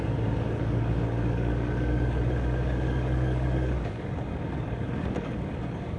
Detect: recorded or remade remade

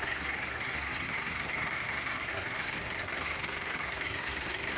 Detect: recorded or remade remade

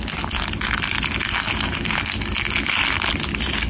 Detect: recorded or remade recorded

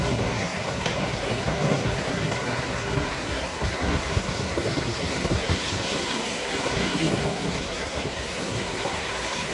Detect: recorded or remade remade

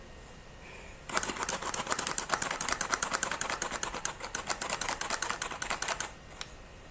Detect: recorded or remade remade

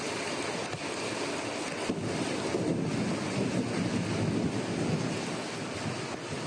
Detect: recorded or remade recorded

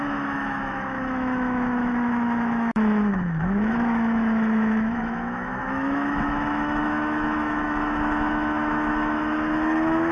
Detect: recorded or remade remade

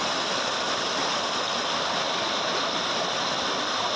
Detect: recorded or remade recorded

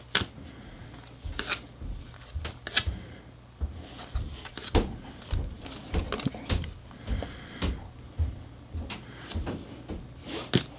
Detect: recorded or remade recorded